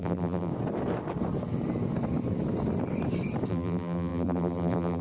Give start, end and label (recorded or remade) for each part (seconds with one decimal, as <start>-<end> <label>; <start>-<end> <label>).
0.0-0.5 remade; 0.5-3.5 recorded; 3.5-5.0 remade